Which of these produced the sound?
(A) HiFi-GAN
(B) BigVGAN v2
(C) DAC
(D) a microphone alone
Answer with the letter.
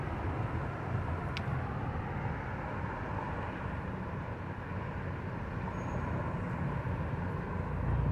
D